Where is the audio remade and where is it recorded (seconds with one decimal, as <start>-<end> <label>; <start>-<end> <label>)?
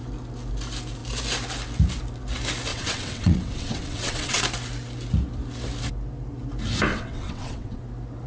0.0-2.7 recorded; 2.7-4.4 remade; 4.4-6.9 recorded; 6.9-7.8 remade; 7.8-8.3 recorded